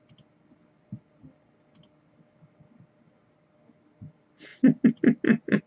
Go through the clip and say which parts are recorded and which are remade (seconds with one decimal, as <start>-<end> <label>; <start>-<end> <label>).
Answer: 0.0-5.7 recorded